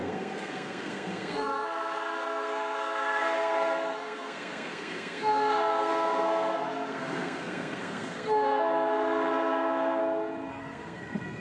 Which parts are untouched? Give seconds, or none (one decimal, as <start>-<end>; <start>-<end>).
10.0-10.5